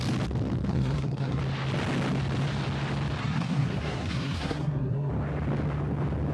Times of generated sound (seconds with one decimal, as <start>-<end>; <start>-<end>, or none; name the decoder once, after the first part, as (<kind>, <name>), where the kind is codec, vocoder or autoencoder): 0.7-1.4 (codec, SNAC); 3.2-5.1